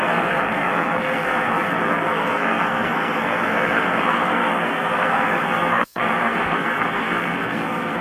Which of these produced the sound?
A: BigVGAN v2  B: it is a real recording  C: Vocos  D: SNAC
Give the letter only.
D